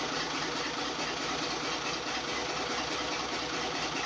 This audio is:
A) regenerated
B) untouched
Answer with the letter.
B